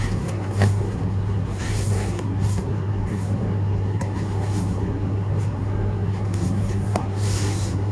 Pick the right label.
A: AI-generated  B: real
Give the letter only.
A